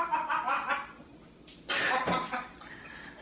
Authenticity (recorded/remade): recorded